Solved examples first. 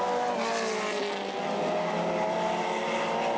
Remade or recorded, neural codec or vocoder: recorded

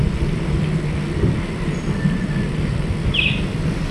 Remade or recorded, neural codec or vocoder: recorded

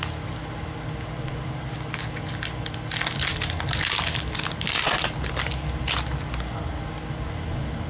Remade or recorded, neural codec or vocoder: recorded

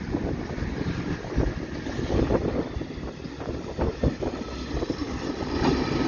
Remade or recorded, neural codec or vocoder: recorded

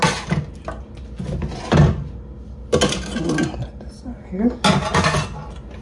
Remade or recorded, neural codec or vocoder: recorded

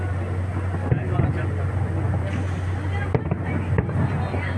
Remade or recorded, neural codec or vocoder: recorded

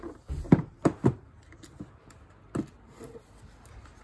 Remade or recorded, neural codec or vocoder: recorded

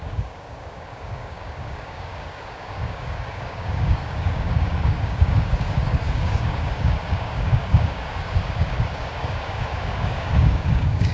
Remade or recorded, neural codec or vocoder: remade, codec, DAC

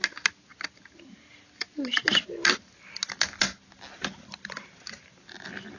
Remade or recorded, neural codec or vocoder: recorded